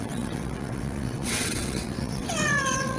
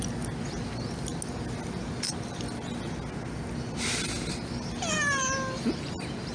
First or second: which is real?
second